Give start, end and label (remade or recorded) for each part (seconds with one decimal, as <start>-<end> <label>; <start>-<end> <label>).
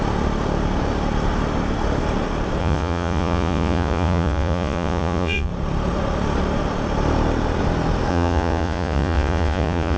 0.0-2.6 recorded; 2.6-5.5 remade; 5.5-8.1 recorded; 8.1-10.0 remade